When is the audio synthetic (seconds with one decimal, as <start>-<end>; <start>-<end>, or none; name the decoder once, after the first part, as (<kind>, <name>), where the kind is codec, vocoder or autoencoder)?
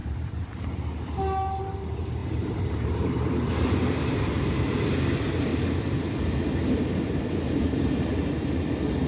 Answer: 0.0-0.8 (vocoder, BigVGAN v2); 2.2-4.4; 5.5-6.1; 6.6-8.3